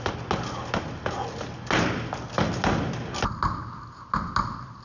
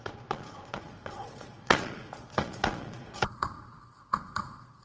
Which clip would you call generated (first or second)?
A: second